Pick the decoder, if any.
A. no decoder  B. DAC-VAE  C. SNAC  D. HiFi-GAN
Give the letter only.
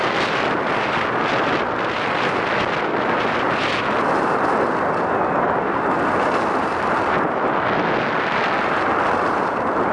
A